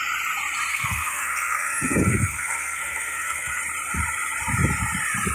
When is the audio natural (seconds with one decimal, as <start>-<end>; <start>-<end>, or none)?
0.0-0.7; 3.6-5.3